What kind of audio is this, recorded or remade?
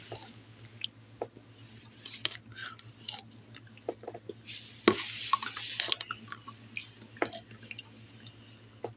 recorded